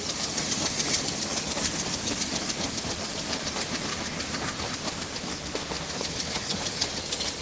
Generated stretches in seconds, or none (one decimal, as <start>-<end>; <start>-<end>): 5.3-5.9